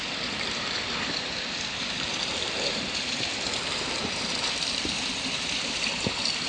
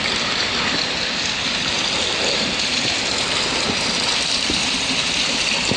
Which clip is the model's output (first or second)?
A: first